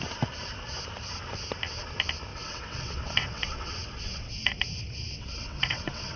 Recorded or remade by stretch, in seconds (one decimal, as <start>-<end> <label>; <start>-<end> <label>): 0.0-2.3 recorded; 2.3-6.2 remade